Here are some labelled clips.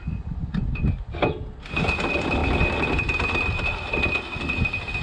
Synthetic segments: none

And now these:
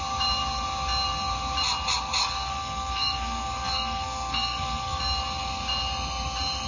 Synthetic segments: 2.2-5.0

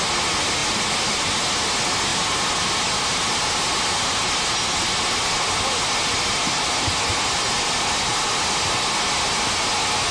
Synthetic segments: none

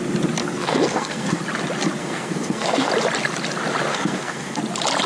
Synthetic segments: 0.4-1.4; 2.0-2.9; 3.9-4.6

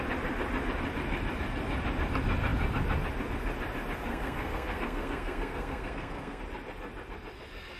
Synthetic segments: 4.1-6.4